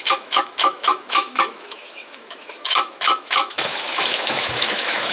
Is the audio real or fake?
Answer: fake